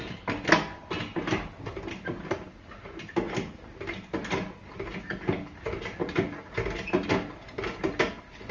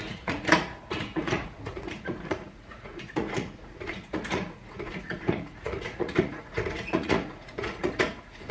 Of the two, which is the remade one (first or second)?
second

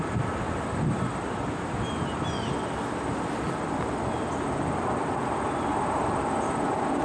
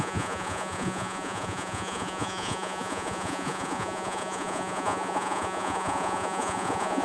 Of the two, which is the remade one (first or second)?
second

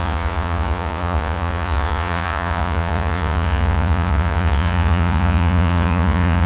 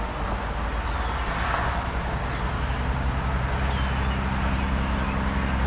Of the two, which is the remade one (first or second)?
first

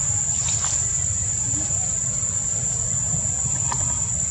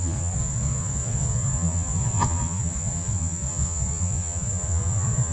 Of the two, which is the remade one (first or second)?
second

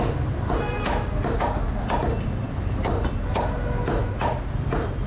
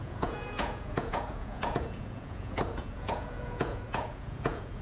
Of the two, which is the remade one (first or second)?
second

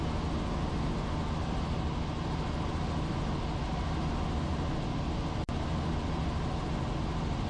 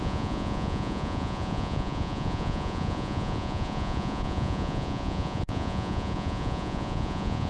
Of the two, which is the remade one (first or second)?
second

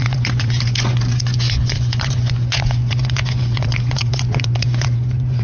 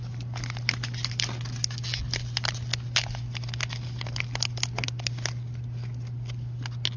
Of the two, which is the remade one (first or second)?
first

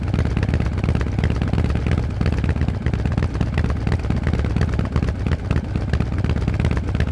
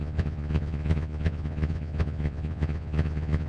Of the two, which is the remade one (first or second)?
second